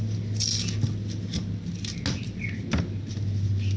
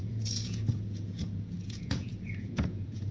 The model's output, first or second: second